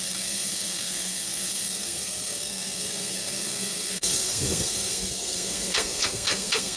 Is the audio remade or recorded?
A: remade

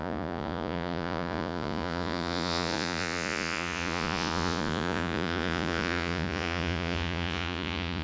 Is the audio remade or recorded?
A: remade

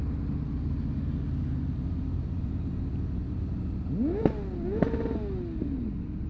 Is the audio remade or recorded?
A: recorded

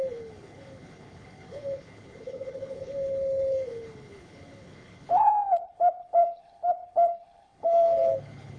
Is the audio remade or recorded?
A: remade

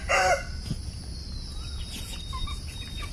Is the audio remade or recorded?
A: recorded